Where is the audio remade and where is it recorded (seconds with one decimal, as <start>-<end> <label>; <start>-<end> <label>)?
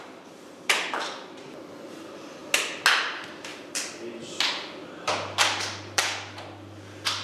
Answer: 0.0-2.4 remade; 2.4-3.0 recorded; 3.0-7.2 remade